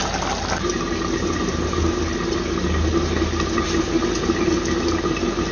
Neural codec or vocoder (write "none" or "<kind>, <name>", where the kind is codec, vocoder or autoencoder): none